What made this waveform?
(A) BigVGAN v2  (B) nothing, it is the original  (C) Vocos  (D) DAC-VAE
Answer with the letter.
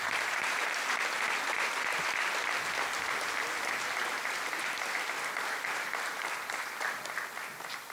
B